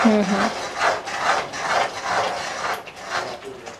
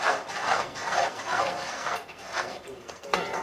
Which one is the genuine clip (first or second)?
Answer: first